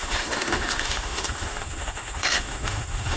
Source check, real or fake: fake